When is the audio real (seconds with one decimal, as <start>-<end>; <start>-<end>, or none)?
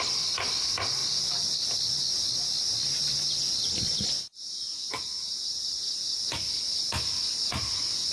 0.0-8.1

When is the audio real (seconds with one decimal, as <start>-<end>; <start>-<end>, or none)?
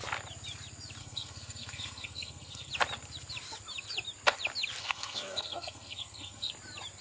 0.0-1.0; 2.7-4.8; 6.5-7.0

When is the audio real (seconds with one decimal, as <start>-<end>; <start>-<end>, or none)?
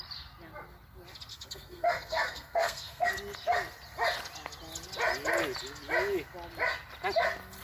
0.0-1.3; 3.1-7.6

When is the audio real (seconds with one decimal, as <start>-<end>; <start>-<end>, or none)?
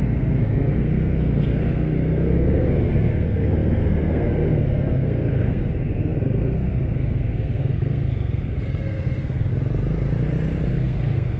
9.5-10.7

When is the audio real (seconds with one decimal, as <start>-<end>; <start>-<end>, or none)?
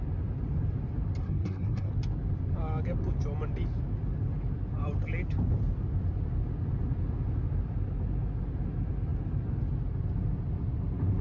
0.0-1.2; 1.9-11.2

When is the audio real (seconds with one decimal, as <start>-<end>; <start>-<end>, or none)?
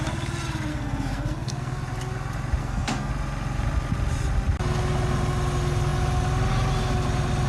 0.0-0.7; 1.8-2.6; 3.1-7.5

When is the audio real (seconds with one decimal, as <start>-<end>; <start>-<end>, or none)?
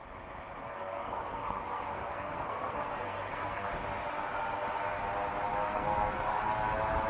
0.0-0.6; 3.7-5.7; 6.5-7.1